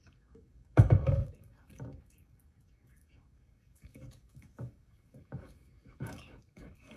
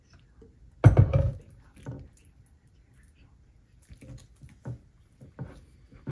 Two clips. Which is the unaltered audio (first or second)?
second